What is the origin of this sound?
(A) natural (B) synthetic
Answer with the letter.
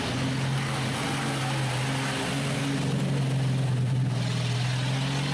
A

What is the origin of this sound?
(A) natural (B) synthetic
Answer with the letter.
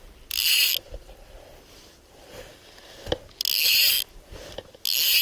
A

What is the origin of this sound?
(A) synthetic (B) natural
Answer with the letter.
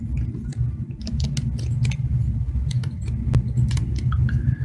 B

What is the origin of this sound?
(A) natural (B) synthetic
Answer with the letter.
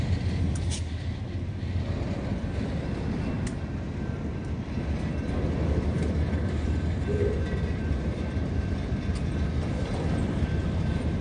A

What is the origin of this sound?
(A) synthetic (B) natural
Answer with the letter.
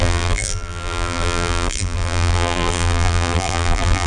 A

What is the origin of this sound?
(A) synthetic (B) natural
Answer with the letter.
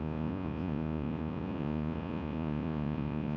A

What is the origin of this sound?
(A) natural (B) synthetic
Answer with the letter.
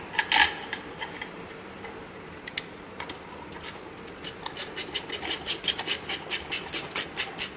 A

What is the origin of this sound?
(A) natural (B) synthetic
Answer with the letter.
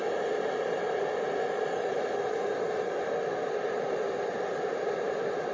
A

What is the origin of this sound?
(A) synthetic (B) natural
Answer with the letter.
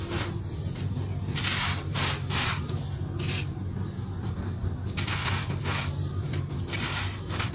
B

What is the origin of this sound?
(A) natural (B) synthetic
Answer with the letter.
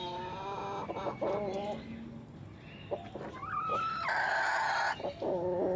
A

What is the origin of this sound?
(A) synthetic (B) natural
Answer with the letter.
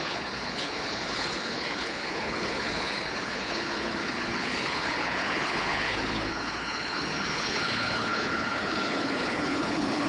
A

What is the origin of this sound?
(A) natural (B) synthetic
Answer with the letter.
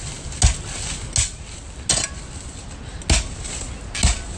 A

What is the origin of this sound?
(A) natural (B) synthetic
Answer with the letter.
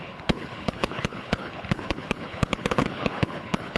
B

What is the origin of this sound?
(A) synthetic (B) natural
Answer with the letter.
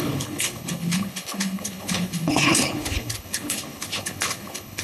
A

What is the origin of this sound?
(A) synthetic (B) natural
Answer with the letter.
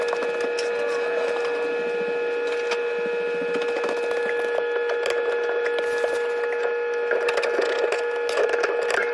B